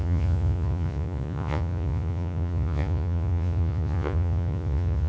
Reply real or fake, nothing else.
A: fake